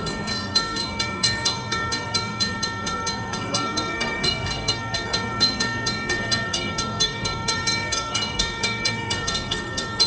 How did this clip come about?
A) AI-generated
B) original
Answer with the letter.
A